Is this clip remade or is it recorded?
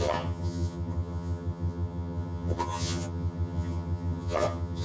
remade